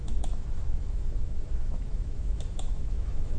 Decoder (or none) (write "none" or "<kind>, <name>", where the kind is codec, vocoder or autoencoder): autoencoder, DAC-VAE